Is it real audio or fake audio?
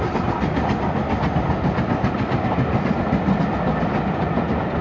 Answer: real